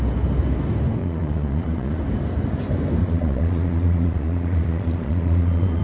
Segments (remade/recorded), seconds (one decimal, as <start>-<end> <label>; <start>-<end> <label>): 0.0-1.0 recorded; 1.0-2.0 remade; 2.0-3.0 recorded; 3.0-5.8 remade